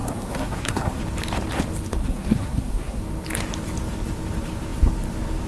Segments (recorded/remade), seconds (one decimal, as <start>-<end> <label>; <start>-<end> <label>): 0.0-1.0 remade; 1.0-2.0 recorded; 2.0-3.0 remade; 3.0-5.5 recorded

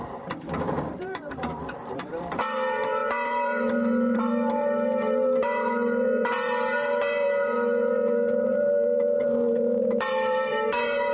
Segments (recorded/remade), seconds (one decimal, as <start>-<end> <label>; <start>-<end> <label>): 0.0-11.1 remade

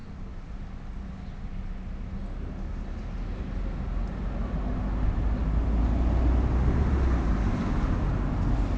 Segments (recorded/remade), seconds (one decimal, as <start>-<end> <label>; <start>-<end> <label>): 0.0-8.8 recorded

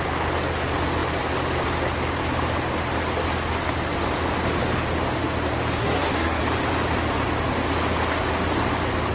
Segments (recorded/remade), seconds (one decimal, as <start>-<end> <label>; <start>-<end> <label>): 0.0-5.8 recorded; 5.8-6.4 remade; 6.4-9.1 recorded

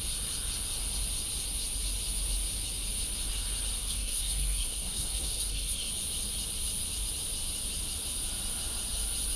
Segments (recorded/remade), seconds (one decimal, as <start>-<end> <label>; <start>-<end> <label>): 0.0-3.8 recorded; 3.8-5.9 remade; 5.9-9.4 recorded

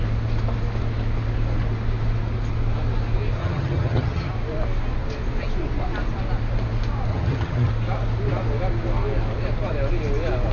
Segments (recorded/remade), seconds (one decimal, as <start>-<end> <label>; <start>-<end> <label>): 0.0-3.4 recorded; 3.4-4.3 remade; 4.3-7.1 recorded; 7.1-7.7 remade; 7.7-10.5 recorded